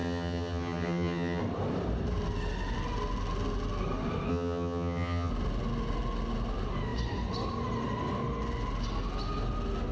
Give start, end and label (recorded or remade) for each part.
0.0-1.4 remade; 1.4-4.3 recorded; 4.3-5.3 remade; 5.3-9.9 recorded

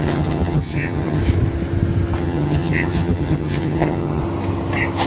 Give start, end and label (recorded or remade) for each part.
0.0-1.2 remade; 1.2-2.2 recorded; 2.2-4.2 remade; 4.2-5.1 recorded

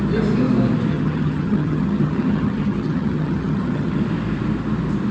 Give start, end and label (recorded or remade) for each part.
0.0-0.9 recorded; 0.9-4.0 remade; 4.0-5.1 recorded